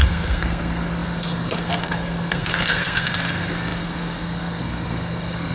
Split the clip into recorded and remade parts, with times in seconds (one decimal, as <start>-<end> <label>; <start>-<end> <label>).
0.0-5.5 remade